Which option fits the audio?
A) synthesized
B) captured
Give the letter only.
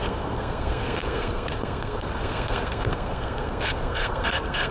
A